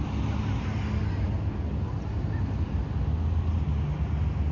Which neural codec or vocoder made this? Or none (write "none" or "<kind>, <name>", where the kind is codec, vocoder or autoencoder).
none